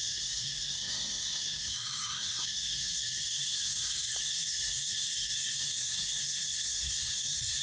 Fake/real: fake